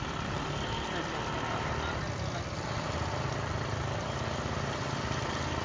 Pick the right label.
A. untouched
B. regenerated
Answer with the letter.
A